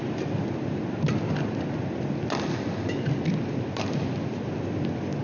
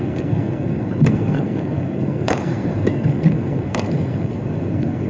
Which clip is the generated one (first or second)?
second